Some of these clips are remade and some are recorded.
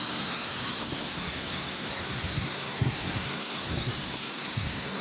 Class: remade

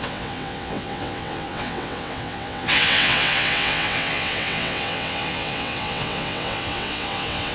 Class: remade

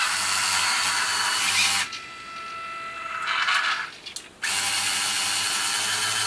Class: recorded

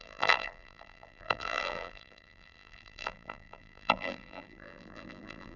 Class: remade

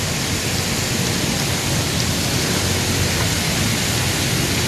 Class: recorded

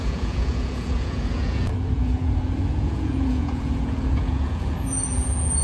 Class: remade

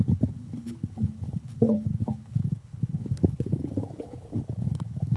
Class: remade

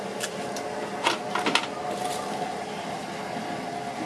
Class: recorded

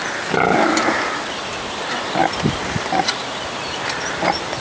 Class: recorded